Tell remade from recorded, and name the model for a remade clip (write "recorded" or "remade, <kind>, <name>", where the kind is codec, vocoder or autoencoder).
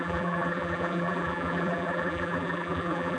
remade, vocoder, BigVGAN v2